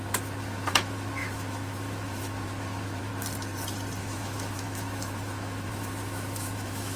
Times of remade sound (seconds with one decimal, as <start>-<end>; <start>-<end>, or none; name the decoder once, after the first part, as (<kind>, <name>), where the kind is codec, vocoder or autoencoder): 0.0-3.1 (autoencoder, DAC-VAE); 4.0-7.0